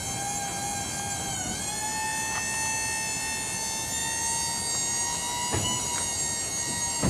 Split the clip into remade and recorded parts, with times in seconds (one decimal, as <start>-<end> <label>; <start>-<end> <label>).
0.0-7.1 recorded